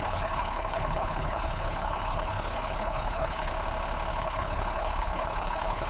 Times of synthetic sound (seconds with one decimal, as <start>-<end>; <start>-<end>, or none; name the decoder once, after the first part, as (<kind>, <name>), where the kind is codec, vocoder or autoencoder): 0.0-3.5 (codec, HILCodec); 4.1-5.9